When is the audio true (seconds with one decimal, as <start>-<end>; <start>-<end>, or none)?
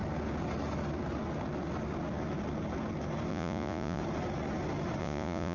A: 0.0-3.3; 4.0-5.0